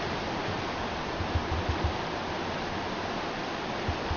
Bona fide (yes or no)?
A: yes